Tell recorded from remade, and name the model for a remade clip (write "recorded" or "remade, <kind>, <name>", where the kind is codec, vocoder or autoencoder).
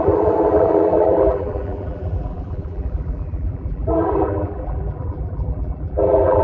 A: remade, vocoder, BigVGAN v2